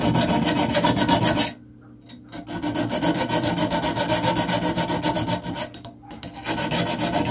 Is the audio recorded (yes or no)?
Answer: yes